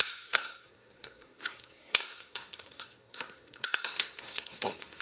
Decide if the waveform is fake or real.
fake